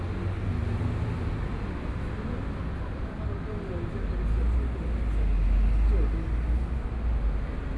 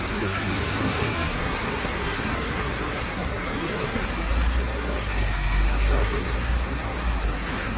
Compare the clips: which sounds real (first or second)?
first